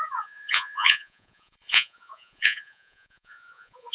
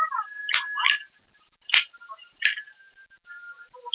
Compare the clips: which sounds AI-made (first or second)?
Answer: first